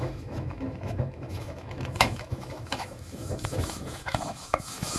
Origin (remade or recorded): remade